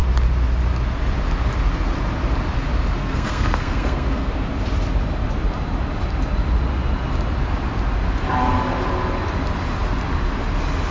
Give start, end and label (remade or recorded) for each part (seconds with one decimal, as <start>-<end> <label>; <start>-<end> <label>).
0.0-3.0 recorded; 3.0-4.3 remade; 4.3-10.9 recorded